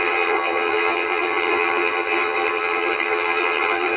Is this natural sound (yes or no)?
no